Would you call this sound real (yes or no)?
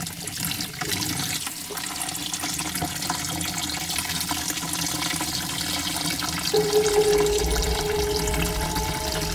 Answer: yes